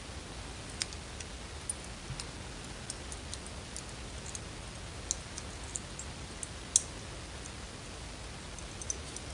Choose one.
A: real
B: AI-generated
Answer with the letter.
A